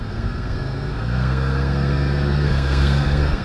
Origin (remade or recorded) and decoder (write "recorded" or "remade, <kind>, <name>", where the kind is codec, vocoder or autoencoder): remade, codec, SNAC